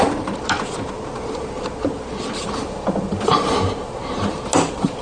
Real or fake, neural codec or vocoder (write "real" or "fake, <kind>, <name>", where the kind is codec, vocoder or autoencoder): real